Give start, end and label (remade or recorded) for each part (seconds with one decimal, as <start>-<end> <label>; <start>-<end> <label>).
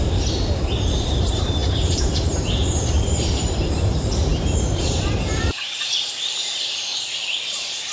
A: 0.0-6.9 remade; 6.9-7.5 recorded; 7.5-7.9 remade